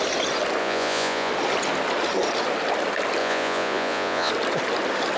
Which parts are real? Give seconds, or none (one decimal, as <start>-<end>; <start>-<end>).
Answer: 0.0-0.6; 1.3-3.2; 4.3-5.2